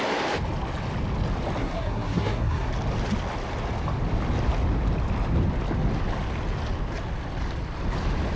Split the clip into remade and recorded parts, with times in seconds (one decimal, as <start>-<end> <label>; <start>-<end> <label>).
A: 0.0-1.6 recorded; 1.6-2.7 remade; 2.7-8.4 recorded